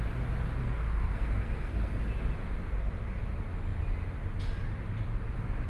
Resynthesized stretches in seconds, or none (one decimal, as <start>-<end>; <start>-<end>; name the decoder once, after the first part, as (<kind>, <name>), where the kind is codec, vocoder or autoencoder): 0.6-2.0 (codec, SNAC); 2.6-3.2